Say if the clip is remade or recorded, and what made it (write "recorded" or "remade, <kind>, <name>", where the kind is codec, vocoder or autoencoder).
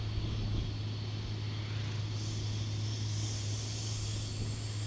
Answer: recorded